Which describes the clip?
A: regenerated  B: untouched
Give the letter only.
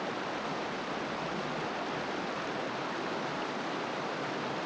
B